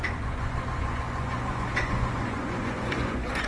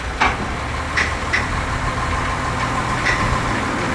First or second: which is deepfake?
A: first